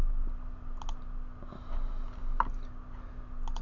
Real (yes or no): yes